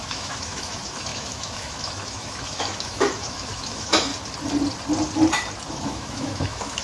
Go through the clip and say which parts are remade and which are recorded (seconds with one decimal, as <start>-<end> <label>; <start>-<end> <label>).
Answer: 0.0-4.1 remade; 4.1-5.7 recorded; 5.7-6.8 remade